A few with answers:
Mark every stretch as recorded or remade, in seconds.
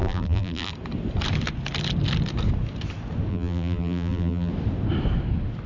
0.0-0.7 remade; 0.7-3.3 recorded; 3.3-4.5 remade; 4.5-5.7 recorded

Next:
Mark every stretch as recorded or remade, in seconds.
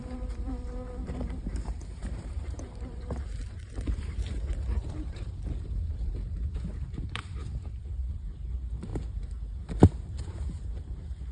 0.0-8.9 remade; 8.9-10.2 recorded; 10.2-11.3 remade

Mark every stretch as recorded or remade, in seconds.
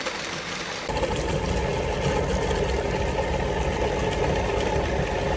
0.0-5.4 recorded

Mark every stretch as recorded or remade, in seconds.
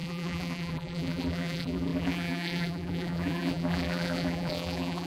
0.0-5.1 remade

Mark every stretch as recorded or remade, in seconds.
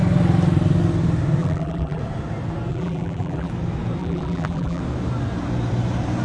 0.0-1.4 recorded; 1.4-2.0 remade; 2.0-2.7 recorded; 2.7-3.5 remade; 3.5-4.0 recorded; 4.0-4.8 remade; 4.8-6.2 recorded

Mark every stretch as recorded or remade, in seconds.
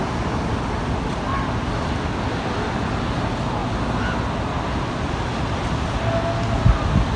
0.0-1.3 recorded; 1.3-2.9 remade; 2.9-7.2 recorded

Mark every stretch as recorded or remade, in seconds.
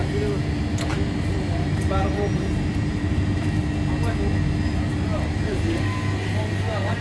0.0-0.9 recorded; 0.9-3.6 remade; 3.6-7.0 recorded